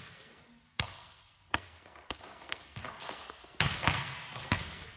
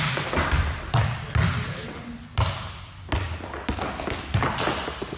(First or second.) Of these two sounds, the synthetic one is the first